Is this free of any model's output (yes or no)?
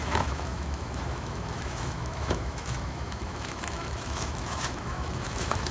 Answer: no